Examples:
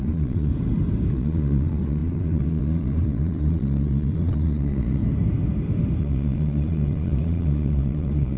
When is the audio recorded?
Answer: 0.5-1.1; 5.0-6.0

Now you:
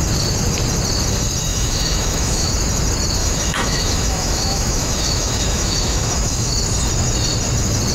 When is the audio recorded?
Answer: 0.0-1.5; 2.5-3.2; 6.5-7.9

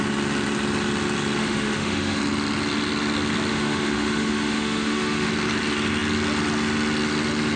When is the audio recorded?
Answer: 0.0-1.4; 2.2-3.5; 5.3-7.6

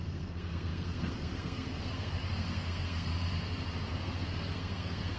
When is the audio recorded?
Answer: 3.1-3.9